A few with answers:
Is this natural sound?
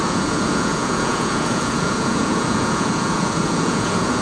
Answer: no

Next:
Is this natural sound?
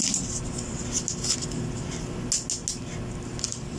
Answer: yes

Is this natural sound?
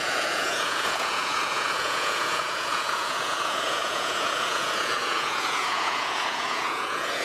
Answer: no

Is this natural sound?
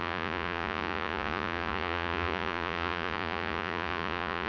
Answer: no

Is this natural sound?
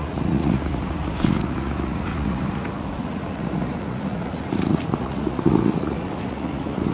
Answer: no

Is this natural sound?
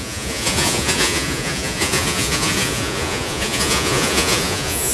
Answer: no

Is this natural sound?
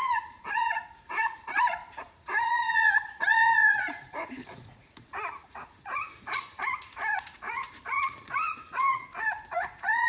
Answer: no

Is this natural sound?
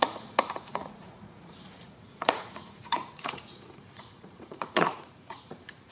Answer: no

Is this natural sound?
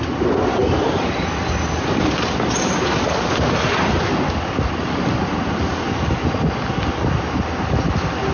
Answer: yes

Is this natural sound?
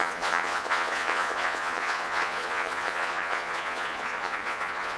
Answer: no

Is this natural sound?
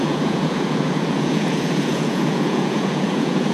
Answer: no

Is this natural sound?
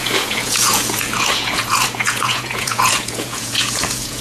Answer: no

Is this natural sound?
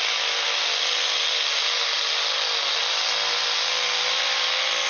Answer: yes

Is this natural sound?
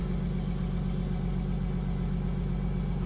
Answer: yes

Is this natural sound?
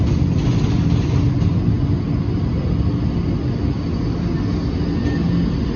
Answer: yes